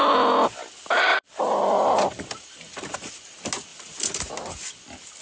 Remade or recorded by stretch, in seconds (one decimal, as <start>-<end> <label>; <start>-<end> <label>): 0.0-1.1 recorded; 1.1-3.1 remade; 3.1-3.7 recorded; 3.7-4.2 remade; 4.2-5.2 recorded